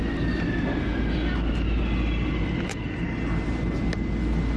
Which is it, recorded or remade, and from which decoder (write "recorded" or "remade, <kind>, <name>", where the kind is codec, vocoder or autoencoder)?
recorded